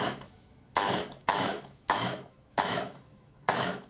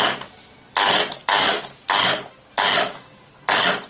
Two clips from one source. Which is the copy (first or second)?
first